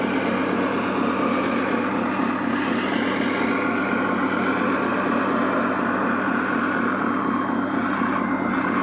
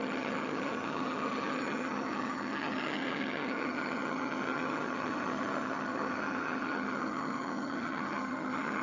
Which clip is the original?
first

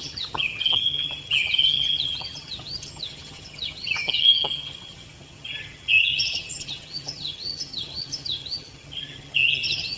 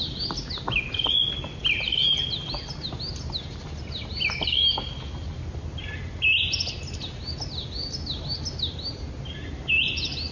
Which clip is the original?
second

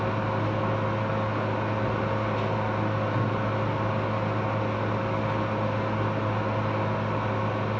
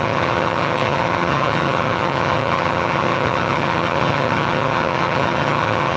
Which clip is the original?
first